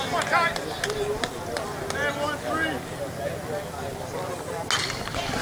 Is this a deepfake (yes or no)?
no